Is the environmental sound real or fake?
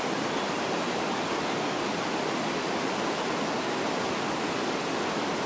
real